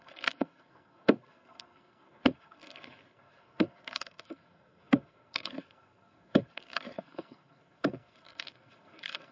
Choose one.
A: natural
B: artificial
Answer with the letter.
B